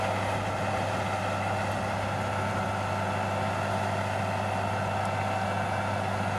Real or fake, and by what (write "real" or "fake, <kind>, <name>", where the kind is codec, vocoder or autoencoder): real